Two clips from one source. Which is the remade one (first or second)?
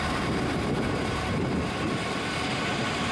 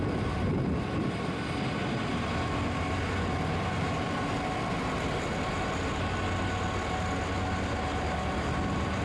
first